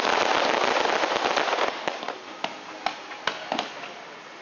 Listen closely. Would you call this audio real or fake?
real